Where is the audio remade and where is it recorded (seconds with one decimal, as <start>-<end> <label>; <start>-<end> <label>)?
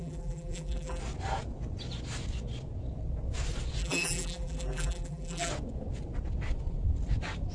0.0-1.0 remade; 1.0-3.8 recorded; 3.8-5.5 remade; 5.5-7.5 recorded